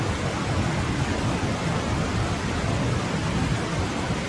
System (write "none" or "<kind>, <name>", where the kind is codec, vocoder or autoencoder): none